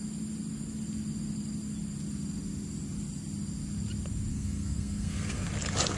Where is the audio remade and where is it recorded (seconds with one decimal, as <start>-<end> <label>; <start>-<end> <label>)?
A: 0.0-4.3 recorded; 4.3-5.5 remade; 5.5-6.0 recorded